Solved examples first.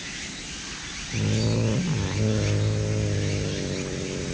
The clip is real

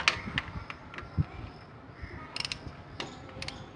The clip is real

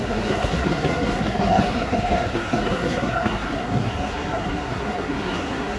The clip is fake